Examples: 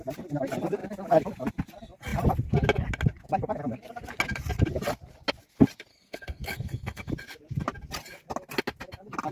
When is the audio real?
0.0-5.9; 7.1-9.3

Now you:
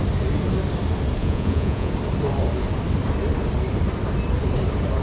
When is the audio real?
0.0-1.2; 1.9-5.0

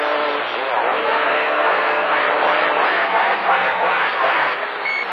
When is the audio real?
0.0-1.0; 2.2-2.9; 4.6-5.1

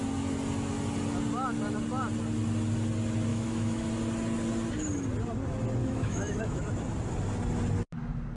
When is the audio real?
0.0-3.3; 3.9-5.8; 6.7-8.4

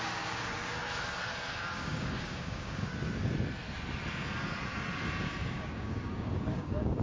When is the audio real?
0.8-1.5; 2.9-5.2

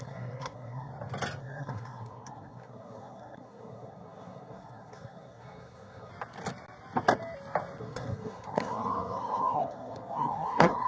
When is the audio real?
0.9-1.4; 6.1-7.8